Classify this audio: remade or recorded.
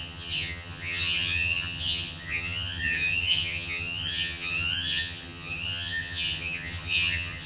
remade